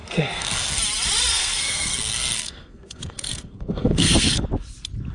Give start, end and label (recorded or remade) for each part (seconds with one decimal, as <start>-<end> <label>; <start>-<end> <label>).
0.0-0.8 remade; 0.8-1.3 recorded; 1.3-4.4 remade; 4.4-5.1 recorded